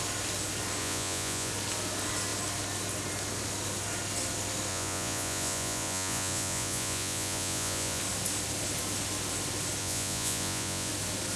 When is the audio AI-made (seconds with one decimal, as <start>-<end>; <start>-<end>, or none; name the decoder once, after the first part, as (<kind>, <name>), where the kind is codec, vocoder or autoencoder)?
0.8-1.5 (vocoder, Vocos); 4.7-8.0; 9.8-10.9